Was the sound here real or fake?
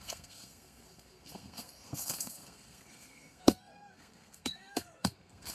fake